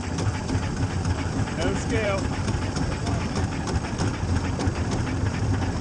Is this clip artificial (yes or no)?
yes